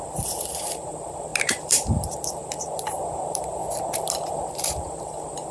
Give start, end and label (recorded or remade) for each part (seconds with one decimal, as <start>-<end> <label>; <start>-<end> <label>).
0.0-3.6 remade; 3.6-4.3 recorded; 4.3-5.5 remade